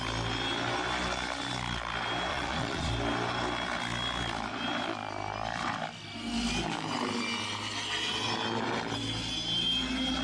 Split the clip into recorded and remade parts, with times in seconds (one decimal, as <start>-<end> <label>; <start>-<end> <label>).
0.0-2.3 recorded; 2.3-2.9 remade; 2.9-10.2 recorded